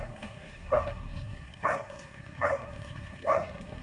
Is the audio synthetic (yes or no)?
yes